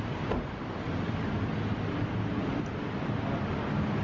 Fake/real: real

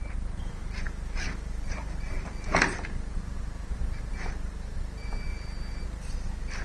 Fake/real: real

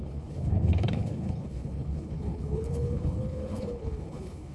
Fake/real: fake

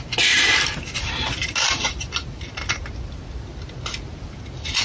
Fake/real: real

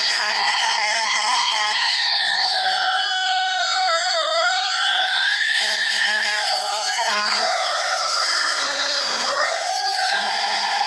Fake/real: fake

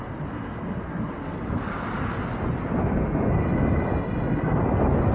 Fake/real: real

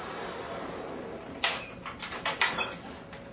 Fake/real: real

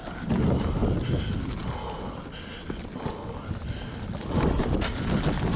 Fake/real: real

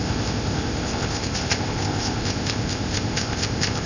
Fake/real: fake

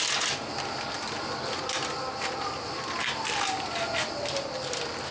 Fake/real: real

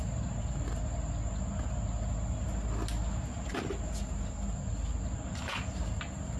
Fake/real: real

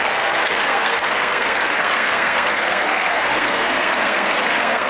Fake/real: fake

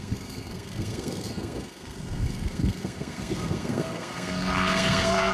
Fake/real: fake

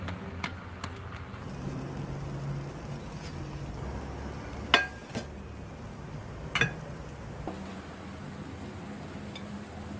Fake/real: real